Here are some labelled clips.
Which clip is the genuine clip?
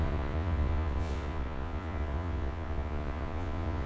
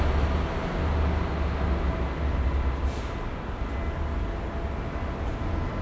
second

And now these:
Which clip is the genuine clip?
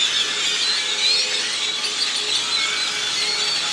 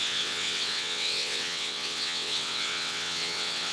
first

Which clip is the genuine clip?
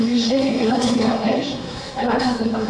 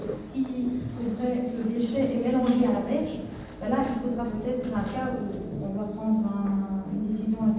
second